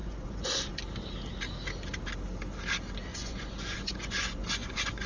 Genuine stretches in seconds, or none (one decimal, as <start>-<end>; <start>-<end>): 0.7-3.1